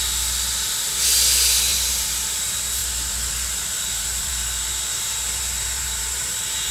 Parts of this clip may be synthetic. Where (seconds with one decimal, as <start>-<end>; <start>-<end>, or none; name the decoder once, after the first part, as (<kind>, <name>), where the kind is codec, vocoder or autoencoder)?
1.7-2.4 (vocoder, BigVGAN v2); 2.8-6.7